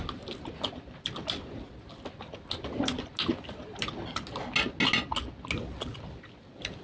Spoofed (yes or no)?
no